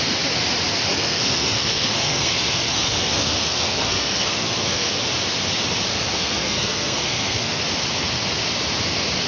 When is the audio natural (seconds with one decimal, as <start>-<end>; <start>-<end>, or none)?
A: 0.0-0.9; 5.0-5.9; 7.6-9.3